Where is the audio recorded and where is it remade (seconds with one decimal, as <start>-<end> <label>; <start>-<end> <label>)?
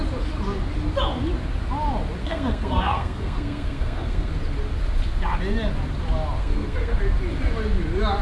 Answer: 0.0-2.2 recorded; 2.2-4.3 remade; 4.3-6.4 recorded; 6.4-7.0 remade; 7.0-8.2 recorded